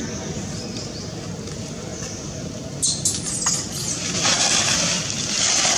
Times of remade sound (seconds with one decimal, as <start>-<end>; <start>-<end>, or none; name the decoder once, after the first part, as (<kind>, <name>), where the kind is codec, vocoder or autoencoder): none